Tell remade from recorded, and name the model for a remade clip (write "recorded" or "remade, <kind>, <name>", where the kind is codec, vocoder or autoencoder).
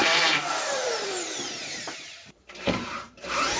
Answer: remade, vocoder, BigVGAN v2